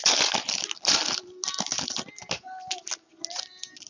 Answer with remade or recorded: recorded